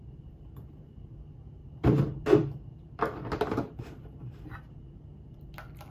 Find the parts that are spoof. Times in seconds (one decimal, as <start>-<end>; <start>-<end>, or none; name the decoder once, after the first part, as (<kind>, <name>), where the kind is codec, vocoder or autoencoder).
1.6-3.8 (vocoder, BigVGAN v2)